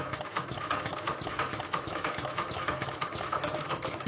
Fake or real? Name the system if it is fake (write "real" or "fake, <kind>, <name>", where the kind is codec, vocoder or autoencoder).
fake, autoencoder, DAC-VAE